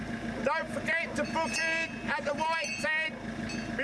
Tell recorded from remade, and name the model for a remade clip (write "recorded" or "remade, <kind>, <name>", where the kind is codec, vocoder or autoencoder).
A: recorded